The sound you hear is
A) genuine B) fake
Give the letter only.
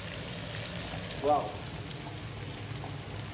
A